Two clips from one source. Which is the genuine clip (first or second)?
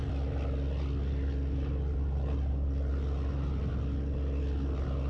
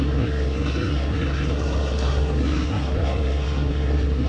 first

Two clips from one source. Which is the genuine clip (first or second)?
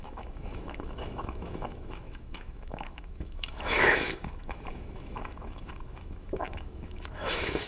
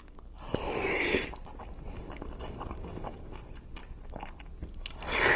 second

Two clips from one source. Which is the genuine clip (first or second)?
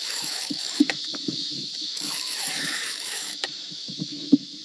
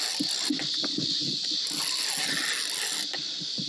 second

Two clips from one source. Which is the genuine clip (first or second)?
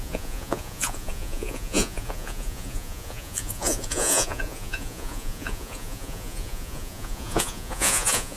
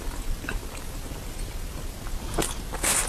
second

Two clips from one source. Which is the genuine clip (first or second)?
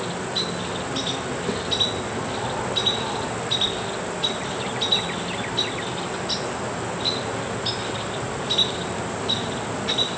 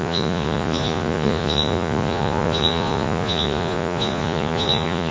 first